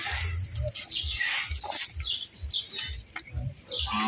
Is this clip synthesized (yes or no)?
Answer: no